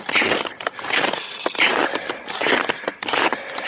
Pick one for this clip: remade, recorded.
recorded